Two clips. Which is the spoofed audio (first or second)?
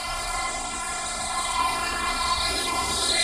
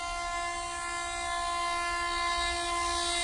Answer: first